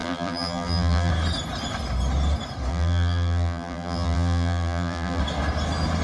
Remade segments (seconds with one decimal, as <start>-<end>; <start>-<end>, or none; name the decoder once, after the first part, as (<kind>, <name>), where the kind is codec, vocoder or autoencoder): 0.0-1.1 (vocoder, BigVGAN v2); 2.7-5.2